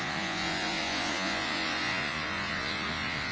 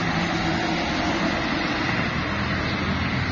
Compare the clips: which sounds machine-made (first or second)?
first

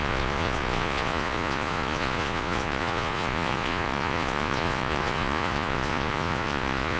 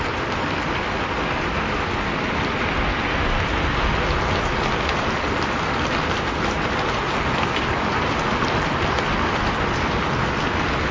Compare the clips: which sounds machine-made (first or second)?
first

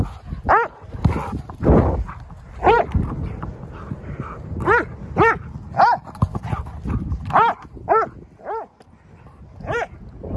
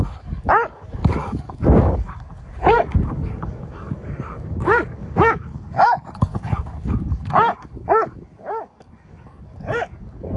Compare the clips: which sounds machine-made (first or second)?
second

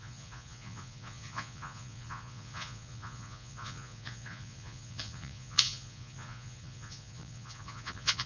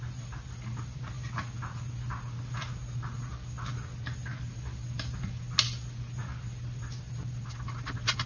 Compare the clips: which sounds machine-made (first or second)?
first